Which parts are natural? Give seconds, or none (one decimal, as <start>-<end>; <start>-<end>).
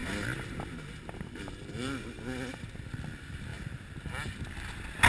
0.0-5.1